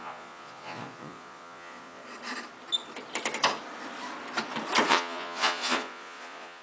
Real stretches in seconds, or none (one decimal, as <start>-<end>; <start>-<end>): 2.0-4.9